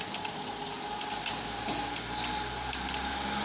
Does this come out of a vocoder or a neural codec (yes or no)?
no